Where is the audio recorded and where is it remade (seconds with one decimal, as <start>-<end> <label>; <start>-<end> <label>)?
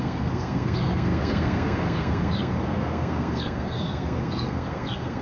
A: 0.0-5.2 remade